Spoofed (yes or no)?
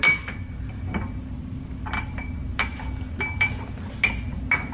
no